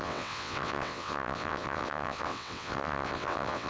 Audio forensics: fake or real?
fake